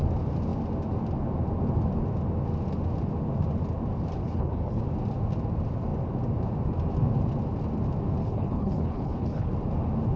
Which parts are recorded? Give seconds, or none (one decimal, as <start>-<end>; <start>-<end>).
0.0-4.2; 4.8-8.2; 9.5-10.2